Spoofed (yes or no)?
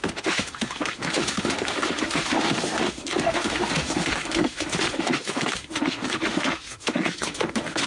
yes